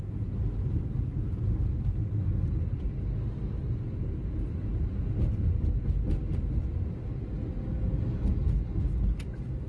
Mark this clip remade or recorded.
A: recorded